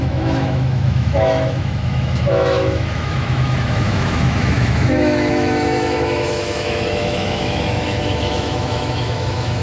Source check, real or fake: fake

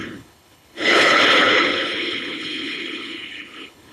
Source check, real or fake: fake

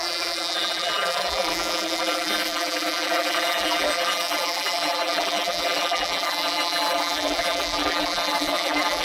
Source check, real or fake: fake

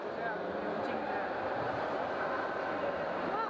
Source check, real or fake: real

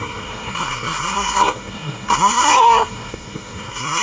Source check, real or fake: fake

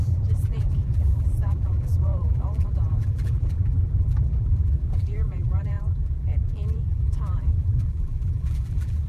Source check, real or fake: fake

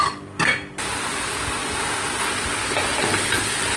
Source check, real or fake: real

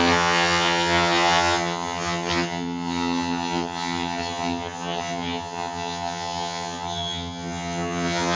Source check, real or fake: fake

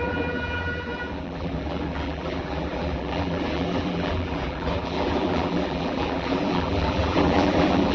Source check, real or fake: fake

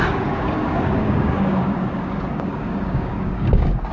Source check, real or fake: fake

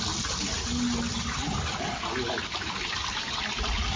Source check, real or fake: real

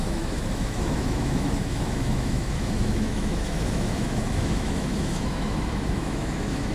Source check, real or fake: fake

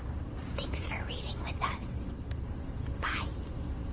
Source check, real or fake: fake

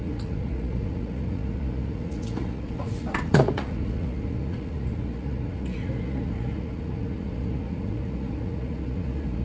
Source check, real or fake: fake